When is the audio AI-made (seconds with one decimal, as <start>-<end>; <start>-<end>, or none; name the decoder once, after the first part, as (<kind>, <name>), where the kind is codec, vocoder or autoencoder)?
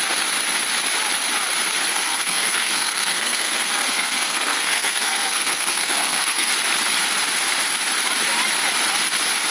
1.9-6.5 (codec, SNAC)